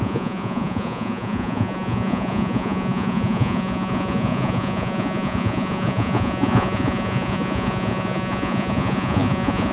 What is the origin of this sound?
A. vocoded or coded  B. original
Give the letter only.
A